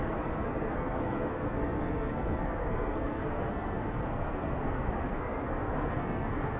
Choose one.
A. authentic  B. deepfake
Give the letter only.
B